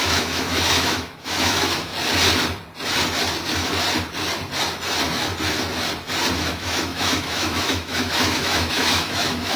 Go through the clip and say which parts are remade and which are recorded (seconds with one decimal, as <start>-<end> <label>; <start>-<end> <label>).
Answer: 0.0-1.9 remade; 1.9-6.4 recorded; 6.4-9.6 remade